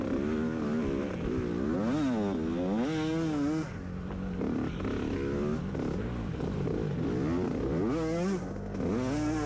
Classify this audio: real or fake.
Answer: real